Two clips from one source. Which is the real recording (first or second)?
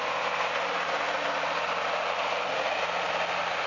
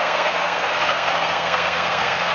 first